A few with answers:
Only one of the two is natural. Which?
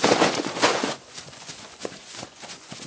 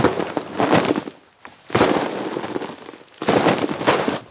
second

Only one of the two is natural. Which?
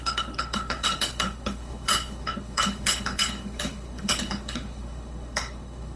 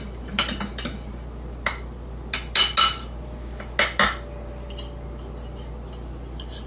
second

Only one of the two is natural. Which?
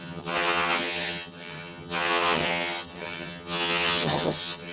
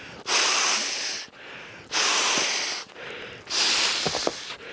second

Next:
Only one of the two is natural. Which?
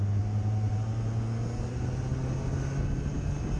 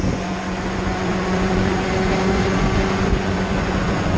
first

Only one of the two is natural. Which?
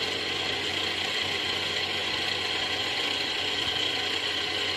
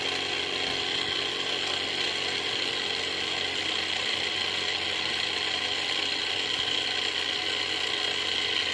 second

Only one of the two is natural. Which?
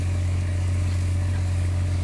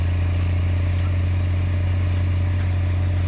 second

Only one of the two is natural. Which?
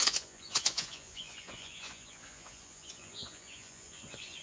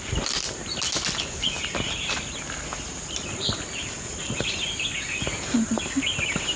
second